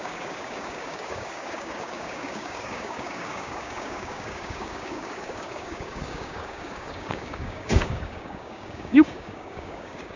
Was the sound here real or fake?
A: fake